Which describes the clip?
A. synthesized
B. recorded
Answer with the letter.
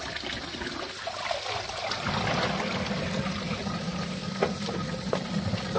B